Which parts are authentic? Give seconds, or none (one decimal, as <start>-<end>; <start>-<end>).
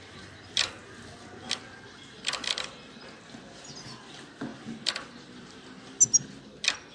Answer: 0.0-6.9